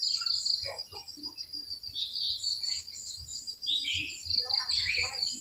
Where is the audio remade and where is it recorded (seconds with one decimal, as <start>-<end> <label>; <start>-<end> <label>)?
0.0-1.5 recorded; 1.5-2.3 remade; 2.3-3.0 recorded; 3.0-4.1 remade; 4.1-5.4 recorded